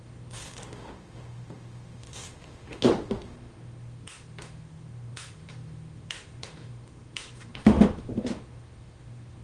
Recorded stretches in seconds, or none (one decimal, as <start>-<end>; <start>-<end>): none